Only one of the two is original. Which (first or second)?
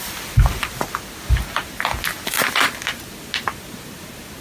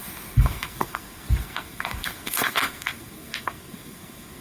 first